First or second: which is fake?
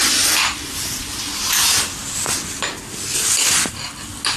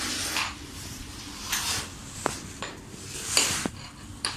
second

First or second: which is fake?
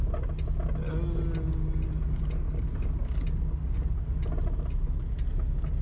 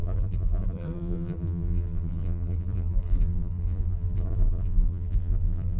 second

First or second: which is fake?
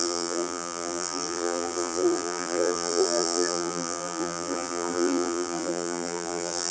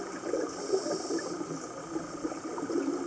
first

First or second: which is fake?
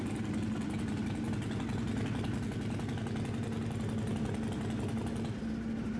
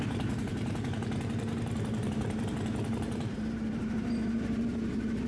second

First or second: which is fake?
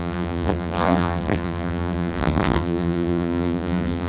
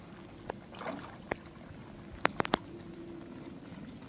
first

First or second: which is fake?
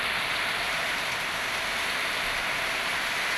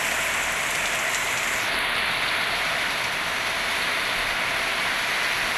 first